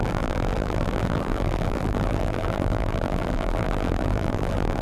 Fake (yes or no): yes